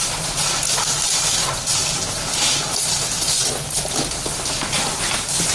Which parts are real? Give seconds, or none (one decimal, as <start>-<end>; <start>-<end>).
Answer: 0.0-5.5